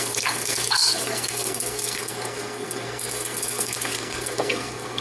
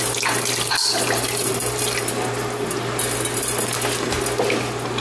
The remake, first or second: first